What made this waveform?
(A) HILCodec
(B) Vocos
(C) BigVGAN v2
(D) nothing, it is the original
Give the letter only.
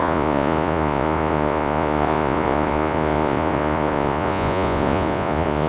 B